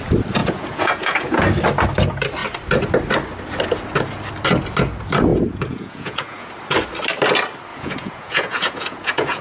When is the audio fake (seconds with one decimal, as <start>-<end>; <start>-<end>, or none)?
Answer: 0.4-1.4; 5.3-6.5; 7.7-9.4